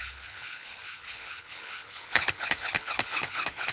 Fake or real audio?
fake